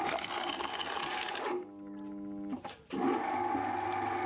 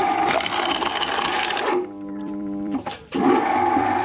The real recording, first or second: first